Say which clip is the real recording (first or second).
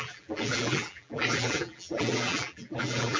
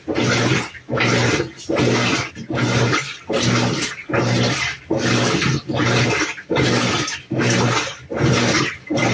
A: second